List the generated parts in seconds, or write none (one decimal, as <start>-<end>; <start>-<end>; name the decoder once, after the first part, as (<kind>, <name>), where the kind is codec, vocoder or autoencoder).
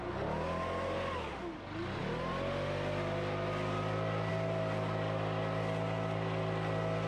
none